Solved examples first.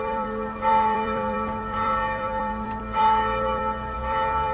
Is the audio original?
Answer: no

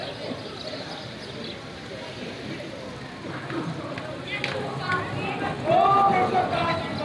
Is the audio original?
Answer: yes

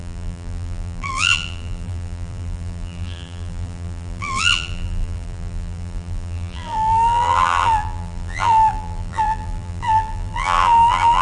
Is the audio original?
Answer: no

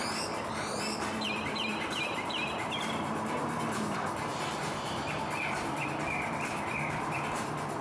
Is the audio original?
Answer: no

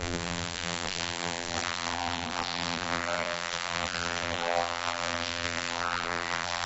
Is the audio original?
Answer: no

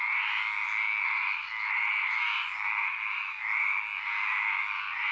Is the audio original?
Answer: yes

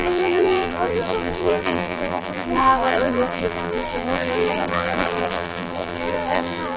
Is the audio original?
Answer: no